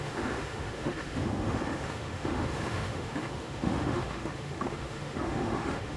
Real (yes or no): no